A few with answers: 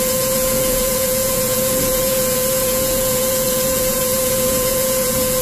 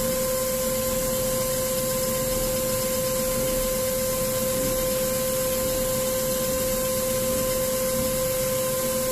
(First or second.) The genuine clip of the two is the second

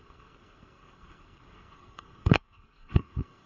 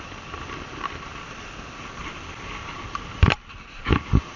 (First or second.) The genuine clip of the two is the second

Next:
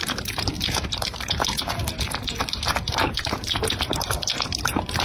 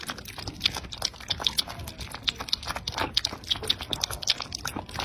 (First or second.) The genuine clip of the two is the second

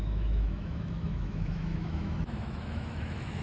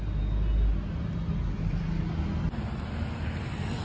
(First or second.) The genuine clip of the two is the second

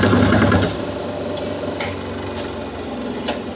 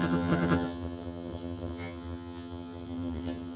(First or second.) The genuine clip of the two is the first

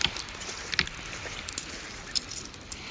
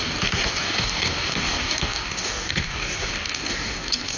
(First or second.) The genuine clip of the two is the first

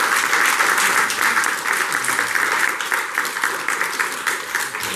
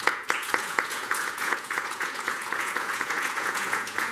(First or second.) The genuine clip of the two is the first